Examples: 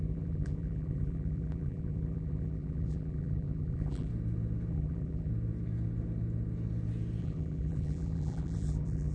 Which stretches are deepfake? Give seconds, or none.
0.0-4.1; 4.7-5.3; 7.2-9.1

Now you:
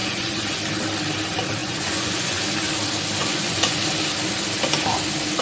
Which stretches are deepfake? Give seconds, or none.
0.0-0.6; 1.6-2.4; 3.2-3.8

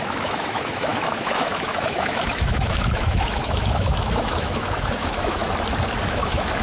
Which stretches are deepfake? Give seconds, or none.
0.0-5.4; 6.1-6.6

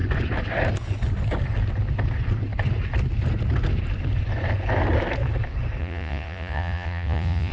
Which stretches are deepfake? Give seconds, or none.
5.8-7.5

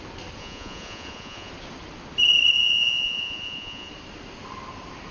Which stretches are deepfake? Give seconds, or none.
0.4-1.5; 2.6-3.9

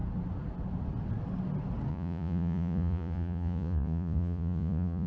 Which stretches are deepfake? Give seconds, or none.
1.9-5.1